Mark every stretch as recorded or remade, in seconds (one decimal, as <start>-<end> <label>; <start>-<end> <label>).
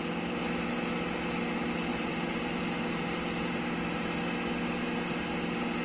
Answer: 0.0-1.9 recorded; 1.9-2.6 remade; 2.6-5.8 recorded